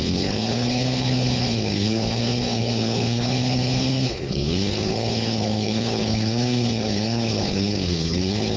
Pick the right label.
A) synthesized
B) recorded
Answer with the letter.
A